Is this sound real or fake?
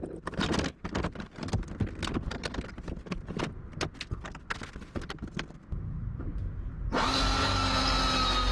real